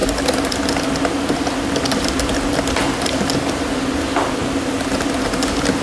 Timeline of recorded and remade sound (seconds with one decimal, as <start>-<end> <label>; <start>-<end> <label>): 0.0-5.8 recorded